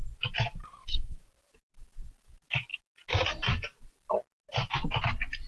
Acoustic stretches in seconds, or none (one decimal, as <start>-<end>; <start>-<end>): 0.0-0.6; 1.2-5.5